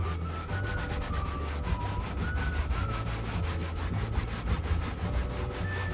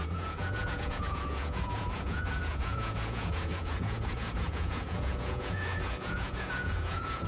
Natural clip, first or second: first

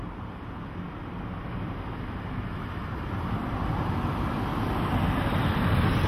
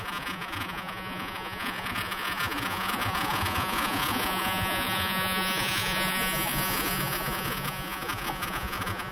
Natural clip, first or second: first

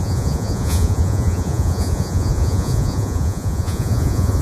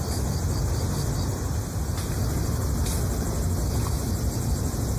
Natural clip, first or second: second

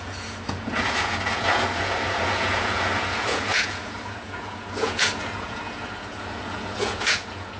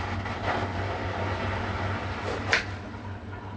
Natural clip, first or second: second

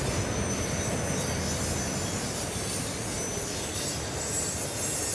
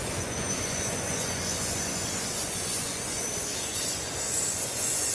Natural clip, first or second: first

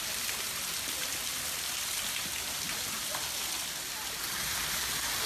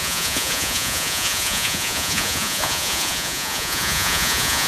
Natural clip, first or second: first